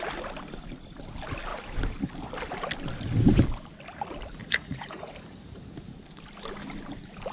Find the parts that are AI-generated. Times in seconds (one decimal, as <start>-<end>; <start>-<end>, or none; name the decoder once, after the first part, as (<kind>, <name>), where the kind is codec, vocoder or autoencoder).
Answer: 4.4-5.1 (vocoder, Vocos)